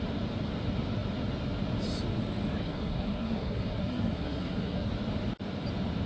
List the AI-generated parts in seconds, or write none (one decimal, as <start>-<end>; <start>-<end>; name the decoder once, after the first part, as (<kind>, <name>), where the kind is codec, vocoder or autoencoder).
2.6-4.9 (codec, SNAC)